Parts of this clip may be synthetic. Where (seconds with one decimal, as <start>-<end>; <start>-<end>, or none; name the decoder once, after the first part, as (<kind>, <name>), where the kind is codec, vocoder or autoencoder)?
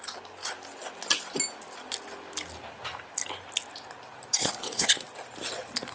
4.4-4.9 (codec, HILCodec)